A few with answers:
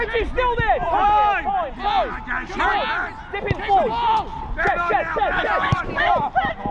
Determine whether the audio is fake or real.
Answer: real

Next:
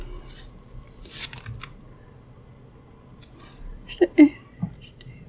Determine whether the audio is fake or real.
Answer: real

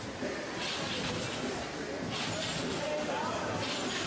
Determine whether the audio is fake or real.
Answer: real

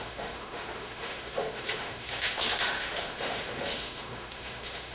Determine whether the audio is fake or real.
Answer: fake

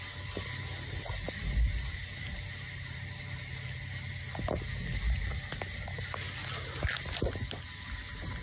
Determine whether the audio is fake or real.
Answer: real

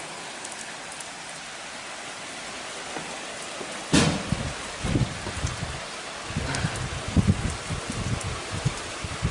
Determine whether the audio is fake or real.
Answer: real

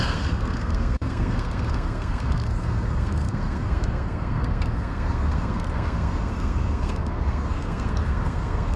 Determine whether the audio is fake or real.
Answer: fake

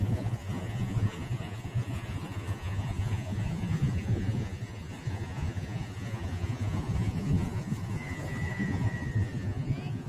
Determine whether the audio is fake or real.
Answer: fake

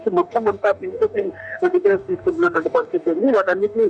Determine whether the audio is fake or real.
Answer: fake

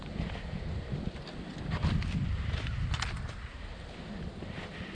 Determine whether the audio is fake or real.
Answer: real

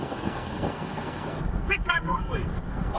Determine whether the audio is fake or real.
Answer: fake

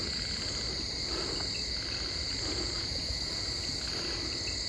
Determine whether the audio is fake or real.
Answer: real